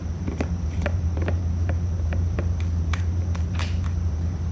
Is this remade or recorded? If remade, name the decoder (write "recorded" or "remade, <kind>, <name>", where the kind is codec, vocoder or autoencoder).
remade, vocoder, BigVGAN v2